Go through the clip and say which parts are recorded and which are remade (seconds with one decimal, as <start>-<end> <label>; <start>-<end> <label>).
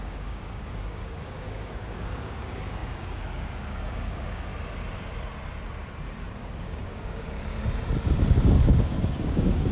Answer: 0.0-4.5 remade; 4.5-6.4 recorded; 6.4-7.5 remade; 7.5-8.3 recorded; 8.3-9.7 remade